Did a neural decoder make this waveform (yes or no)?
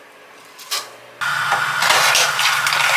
no